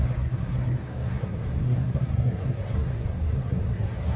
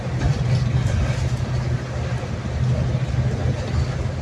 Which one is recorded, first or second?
second